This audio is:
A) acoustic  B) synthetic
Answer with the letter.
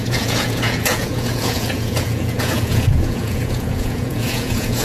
B